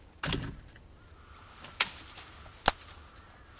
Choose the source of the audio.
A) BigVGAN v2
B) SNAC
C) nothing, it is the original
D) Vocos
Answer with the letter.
C